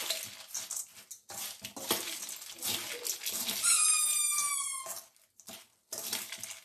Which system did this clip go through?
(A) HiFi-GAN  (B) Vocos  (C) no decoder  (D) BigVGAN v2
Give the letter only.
C